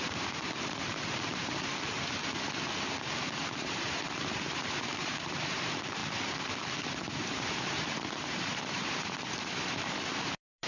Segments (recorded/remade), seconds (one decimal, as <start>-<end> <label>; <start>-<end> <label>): 0.0-1.7 remade; 1.7-3.4 recorded; 3.4-6.0 remade; 6.0-7.2 recorded; 7.2-10.7 remade